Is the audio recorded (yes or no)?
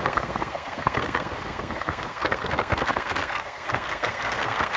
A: no